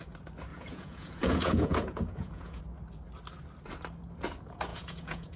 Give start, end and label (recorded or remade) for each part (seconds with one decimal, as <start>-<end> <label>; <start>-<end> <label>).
0.0-0.5 recorded; 0.5-2.6 remade; 2.6-4.7 recorded; 4.7-5.4 remade